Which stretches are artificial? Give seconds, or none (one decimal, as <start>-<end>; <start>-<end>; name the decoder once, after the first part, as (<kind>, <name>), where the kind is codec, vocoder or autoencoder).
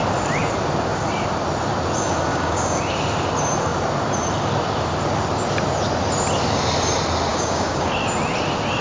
2.3-2.8 (codec, DAC); 7.3-7.9